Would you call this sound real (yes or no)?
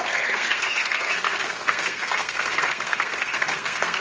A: no